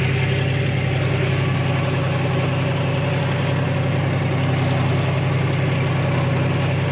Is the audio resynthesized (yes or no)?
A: no